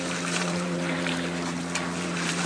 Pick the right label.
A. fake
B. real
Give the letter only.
A